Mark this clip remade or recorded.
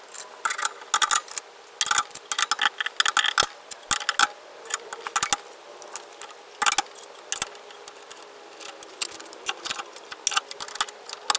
recorded